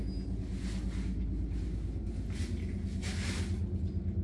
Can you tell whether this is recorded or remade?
recorded